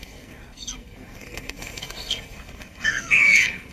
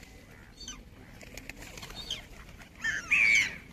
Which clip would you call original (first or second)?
second